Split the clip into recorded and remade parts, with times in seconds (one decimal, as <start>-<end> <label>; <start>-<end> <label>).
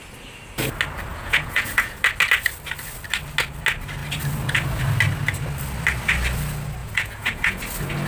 0.0-1.1 recorded; 1.1-2.0 remade; 2.0-6.8 recorded; 6.8-7.6 remade; 7.6-8.1 recorded